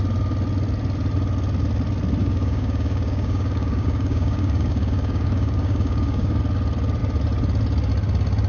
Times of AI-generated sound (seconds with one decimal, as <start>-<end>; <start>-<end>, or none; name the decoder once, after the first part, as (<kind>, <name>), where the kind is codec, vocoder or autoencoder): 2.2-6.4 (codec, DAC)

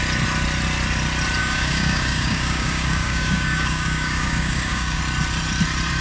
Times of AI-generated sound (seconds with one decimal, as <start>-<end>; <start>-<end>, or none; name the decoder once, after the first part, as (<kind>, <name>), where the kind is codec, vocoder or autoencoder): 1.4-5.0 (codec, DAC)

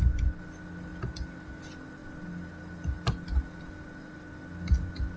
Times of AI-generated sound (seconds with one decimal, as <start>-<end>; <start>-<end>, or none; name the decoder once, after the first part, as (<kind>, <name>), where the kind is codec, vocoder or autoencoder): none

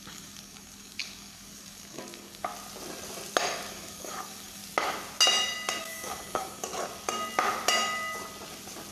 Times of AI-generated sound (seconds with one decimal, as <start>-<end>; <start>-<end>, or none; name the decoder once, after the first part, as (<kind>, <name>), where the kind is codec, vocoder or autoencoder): 0.0-2.5 (codec, DAC); 3.7-4.6; 5.8-6.7

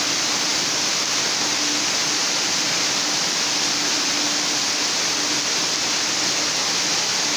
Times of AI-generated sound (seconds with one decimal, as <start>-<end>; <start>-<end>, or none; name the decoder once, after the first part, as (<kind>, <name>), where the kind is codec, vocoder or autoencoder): none

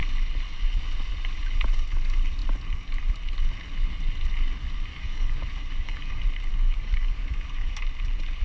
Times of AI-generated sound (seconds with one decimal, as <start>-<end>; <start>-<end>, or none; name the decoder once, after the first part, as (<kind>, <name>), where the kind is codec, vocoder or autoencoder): 4.9-6.1 (codec, DAC); 6.5-7.7

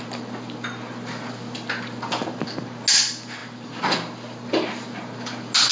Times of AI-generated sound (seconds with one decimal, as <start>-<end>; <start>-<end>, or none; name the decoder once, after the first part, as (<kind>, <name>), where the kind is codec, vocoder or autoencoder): none